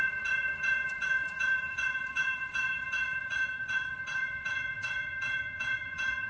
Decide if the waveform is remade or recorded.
remade